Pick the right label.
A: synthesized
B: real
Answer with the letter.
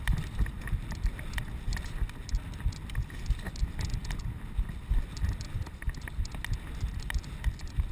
B